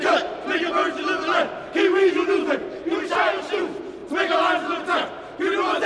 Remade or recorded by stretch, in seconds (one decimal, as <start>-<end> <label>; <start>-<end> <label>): 0.0-4.0 recorded; 4.0-4.8 remade; 4.8-5.9 recorded